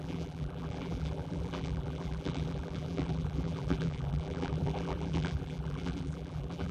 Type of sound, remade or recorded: remade